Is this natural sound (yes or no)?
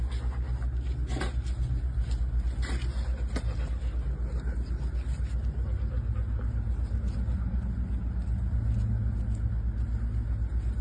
yes